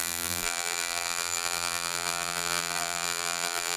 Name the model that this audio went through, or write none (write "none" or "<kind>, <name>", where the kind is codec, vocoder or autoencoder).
vocoder, BigVGAN v2